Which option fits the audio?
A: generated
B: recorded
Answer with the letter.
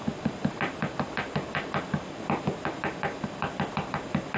B